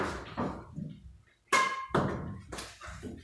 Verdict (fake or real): real